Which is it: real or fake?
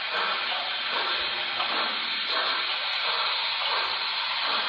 real